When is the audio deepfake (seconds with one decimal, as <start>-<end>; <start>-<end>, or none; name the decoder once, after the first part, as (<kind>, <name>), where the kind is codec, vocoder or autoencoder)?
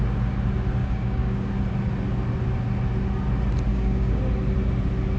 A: 0.8-1.5 (codec, DAC); 3.7-4.2